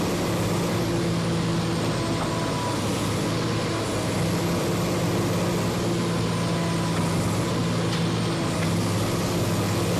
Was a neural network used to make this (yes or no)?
no